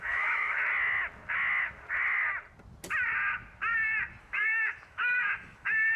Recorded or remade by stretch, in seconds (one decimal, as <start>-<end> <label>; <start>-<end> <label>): 0.0-0.6 remade; 0.6-4.2 recorded; 4.2-6.0 remade